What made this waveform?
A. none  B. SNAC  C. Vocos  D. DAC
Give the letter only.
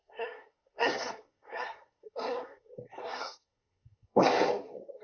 B